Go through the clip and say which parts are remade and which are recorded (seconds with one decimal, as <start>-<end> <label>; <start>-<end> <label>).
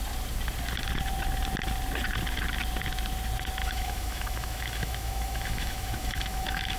0.0-3.6 recorded; 3.6-6.8 remade